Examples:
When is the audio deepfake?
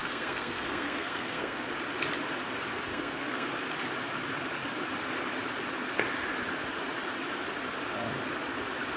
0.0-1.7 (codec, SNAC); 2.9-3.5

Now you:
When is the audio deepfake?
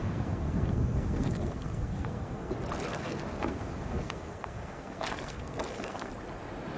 0.0-2.5 (codec, SNAC); 2.9-6.1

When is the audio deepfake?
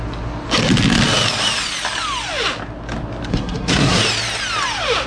3.3-4.0 (codec, SNAC)